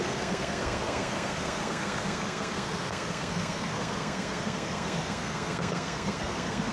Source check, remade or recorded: remade